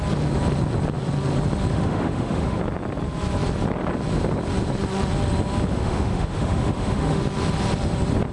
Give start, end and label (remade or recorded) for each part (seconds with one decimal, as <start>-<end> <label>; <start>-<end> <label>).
0.0-1.7 recorded; 1.7-2.6 remade; 2.6-5.7 recorded; 5.7-7.2 remade; 7.2-8.3 recorded